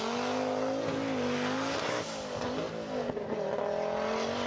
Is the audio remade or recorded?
recorded